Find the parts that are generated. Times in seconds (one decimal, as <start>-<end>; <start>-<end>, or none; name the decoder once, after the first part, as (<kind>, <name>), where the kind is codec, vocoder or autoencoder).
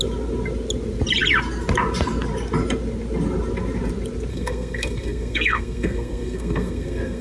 4.3-7.2 (codec, SNAC)